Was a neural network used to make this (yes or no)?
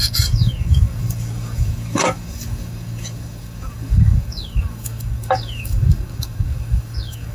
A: yes